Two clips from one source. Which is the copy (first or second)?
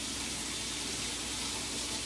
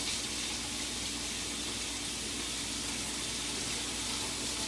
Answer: first